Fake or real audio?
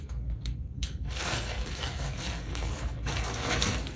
fake